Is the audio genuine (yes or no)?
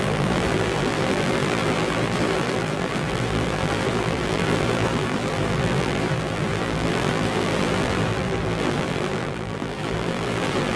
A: no